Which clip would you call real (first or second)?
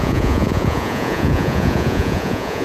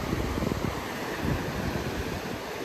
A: second